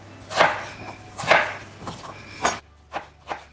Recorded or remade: recorded